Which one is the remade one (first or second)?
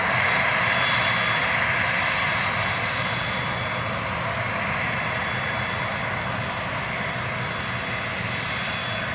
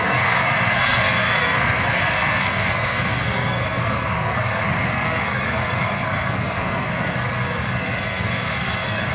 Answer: second